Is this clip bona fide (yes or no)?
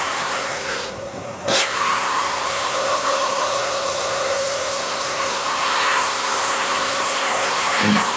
no